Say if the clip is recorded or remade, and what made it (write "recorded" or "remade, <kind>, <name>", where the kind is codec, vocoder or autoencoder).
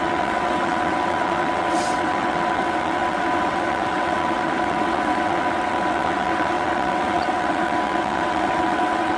remade, vocoder, WaveNeXt